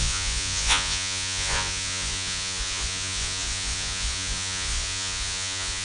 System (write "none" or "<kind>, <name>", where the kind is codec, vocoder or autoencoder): vocoder, Vocos